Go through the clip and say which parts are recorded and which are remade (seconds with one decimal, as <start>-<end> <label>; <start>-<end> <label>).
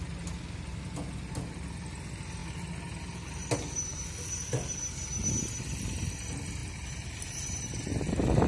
0.0-8.5 recorded